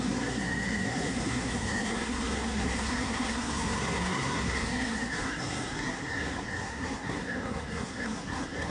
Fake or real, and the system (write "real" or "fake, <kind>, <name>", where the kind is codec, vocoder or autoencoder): fake, codec, SNAC